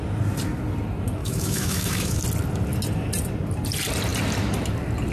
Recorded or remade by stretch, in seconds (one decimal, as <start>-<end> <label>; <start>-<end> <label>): 0.0-1.2 recorded; 1.2-2.2 remade; 2.2-5.1 recorded